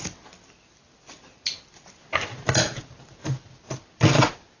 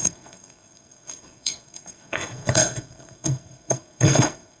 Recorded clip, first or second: first